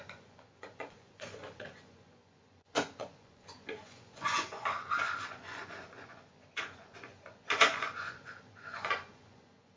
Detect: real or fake fake